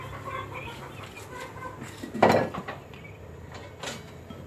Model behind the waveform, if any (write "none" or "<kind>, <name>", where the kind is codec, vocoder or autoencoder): vocoder, BigVGAN v2